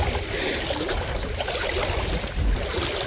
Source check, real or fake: real